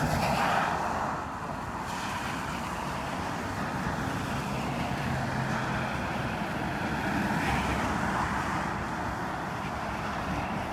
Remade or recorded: recorded